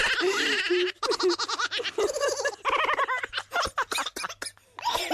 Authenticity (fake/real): real